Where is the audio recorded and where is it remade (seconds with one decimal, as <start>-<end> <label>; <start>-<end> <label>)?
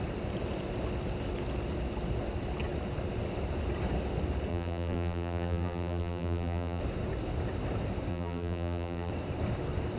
0.0-4.5 recorded; 4.5-6.8 remade; 6.8-8.1 recorded; 8.1-9.1 remade; 9.1-10.0 recorded